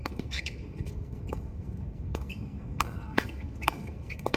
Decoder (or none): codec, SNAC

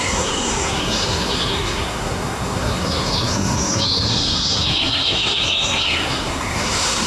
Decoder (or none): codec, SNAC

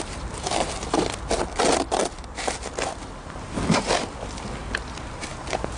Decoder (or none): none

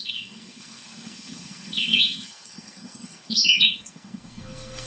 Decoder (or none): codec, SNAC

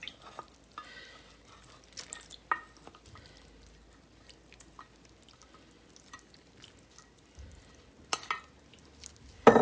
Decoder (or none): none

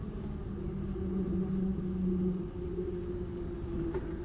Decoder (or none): none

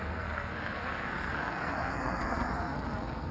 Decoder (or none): codec, SNAC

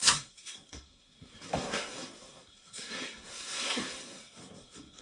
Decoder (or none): codec, SNAC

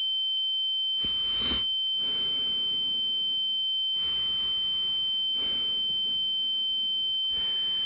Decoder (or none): none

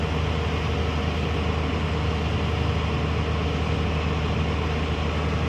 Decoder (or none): none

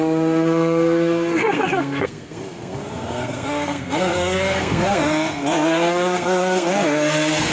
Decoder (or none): codec, SNAC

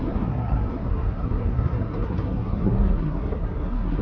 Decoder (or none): codec, SNAC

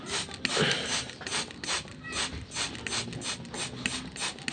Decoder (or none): none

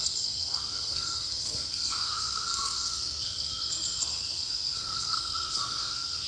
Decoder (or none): codec, SNAC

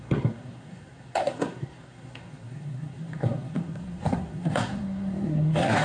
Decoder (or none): codec, SNAC